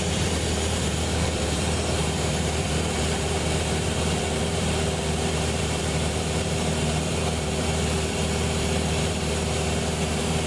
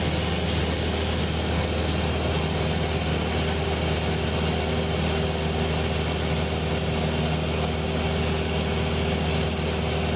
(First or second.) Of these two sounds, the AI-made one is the first